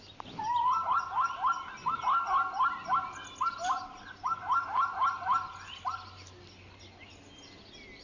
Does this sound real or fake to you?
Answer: real